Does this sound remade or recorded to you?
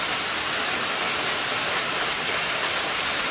recorded